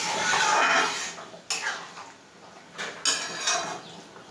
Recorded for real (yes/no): yes